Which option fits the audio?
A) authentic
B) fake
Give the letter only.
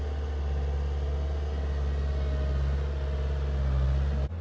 A